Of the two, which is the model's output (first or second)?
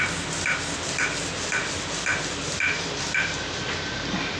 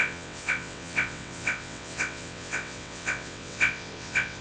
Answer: second